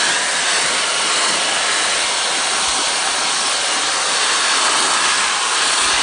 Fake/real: real